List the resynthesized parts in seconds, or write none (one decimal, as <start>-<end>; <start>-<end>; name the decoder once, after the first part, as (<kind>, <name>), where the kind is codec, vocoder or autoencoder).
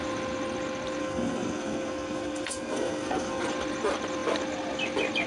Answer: 1.0-3.4 (codec, SNAC)